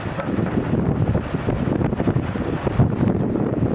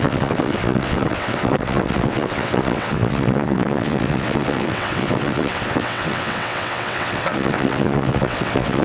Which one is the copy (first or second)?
second